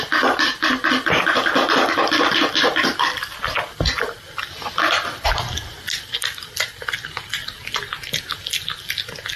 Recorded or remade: recorded